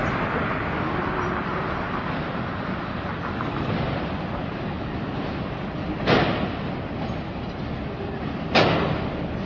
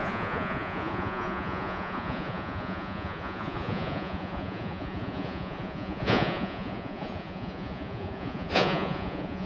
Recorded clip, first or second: first